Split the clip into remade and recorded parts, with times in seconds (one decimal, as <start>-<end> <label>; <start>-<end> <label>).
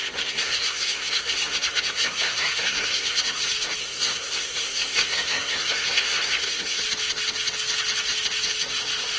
0.0-3.4 remade; 3.4-3.8 recorded; 3.8-6.8 remade; 6.8-9.2 recorded